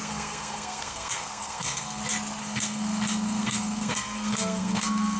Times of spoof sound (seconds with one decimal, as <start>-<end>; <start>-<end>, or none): 0.0-2.0; 2.4-5.2